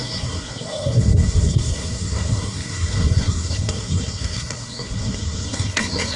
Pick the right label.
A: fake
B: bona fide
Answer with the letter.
A